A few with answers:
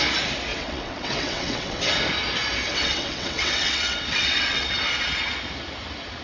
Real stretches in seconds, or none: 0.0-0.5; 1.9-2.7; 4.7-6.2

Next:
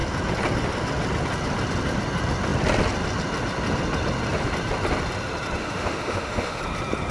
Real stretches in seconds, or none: 0.0-5.6; 6.6-7.1

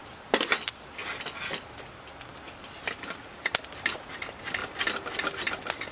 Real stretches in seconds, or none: 0.0-4.6; 5.3-5.9

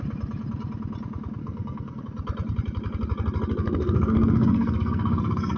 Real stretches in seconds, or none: 0.0-1.4; 2.0-3.6